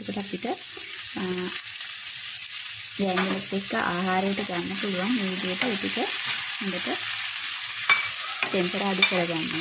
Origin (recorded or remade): recorded